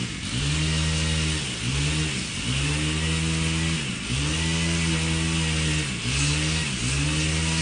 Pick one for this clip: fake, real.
real